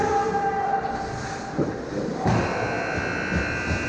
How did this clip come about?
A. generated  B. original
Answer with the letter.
B